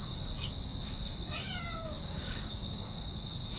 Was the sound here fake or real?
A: fake